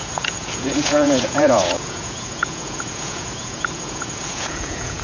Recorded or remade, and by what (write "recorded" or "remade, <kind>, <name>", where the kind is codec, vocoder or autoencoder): remade, vocoder, Vocos